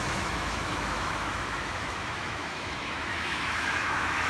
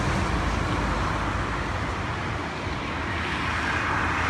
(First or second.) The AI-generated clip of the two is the first